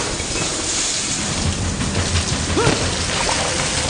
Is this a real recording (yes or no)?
yes